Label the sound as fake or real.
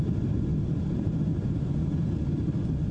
real